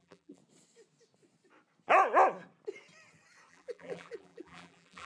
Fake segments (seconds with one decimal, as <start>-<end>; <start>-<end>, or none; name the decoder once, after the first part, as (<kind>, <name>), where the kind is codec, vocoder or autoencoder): 0.0-0.4 (vocoder, BigVGAN v2); 3.5-5.1